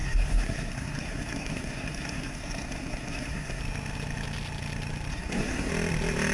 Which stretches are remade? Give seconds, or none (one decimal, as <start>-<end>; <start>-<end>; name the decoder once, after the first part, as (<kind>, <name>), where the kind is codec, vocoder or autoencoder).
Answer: 0.0-3.6 (codec, SNAC); 5.1-5.7